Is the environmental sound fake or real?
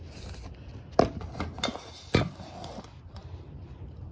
real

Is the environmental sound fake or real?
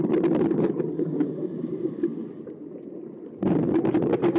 real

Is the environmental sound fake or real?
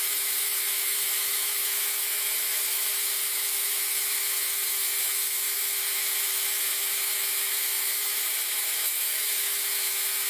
fake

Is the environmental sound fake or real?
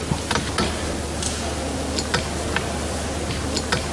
real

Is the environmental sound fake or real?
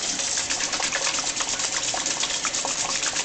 real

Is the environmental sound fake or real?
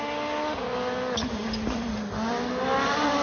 real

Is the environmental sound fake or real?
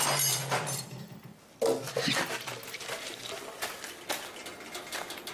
real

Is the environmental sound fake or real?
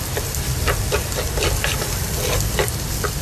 real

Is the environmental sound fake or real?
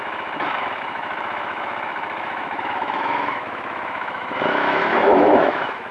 fake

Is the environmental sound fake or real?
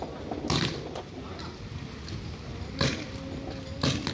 real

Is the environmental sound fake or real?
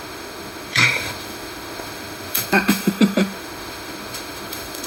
fake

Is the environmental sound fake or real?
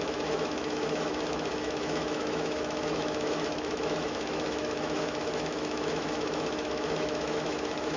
fake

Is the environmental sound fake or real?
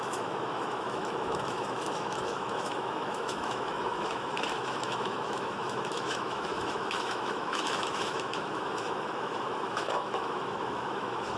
fake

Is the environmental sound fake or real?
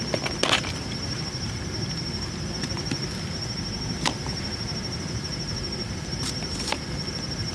real